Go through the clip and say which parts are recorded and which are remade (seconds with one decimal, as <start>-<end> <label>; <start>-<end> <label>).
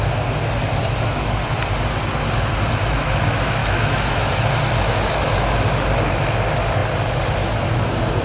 0.0-3.6 recorded; 3.6-4.3 remade; 4.3-8.2 recorded